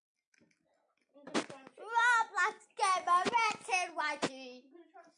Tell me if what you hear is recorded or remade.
recorded